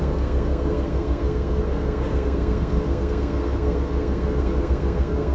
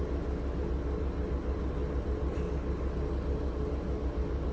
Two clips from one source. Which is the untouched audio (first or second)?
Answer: second